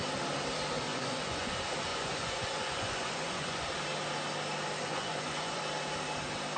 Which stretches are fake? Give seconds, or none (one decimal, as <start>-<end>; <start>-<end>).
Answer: 0.9-1.5; 1.9-3.6; 4.8-5.6